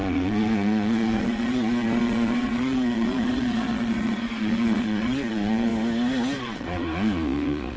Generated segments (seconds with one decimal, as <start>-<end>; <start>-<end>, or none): 0.0-5.7; 6.4-7.8